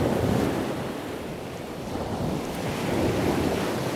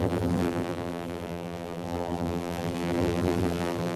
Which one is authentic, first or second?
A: first